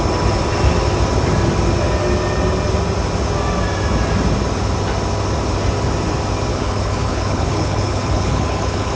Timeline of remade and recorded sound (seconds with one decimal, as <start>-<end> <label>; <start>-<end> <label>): 0.0-6.5 recorded; 6.5-8.9 remade